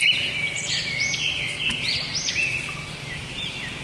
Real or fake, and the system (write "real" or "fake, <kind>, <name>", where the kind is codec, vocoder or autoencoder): fake, vocoder, BigVGAN v2